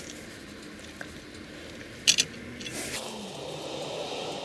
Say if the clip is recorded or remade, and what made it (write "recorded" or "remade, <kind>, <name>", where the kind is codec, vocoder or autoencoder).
recorded